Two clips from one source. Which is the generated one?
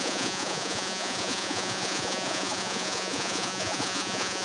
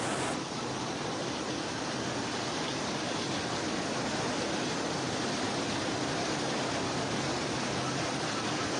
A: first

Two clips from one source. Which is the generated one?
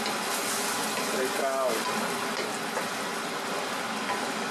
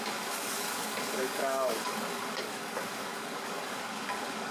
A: second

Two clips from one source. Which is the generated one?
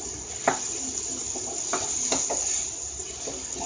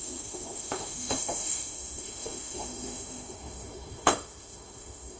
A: second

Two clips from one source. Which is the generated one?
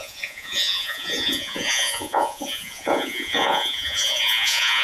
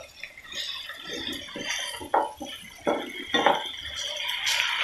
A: first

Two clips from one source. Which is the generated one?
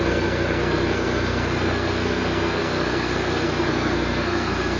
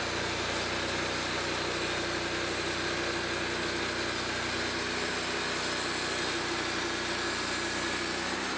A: first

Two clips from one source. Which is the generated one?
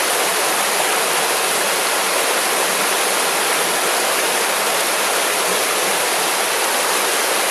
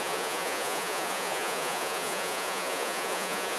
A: second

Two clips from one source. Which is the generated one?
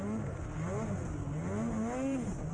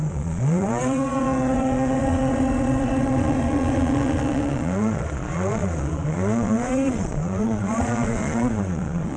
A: second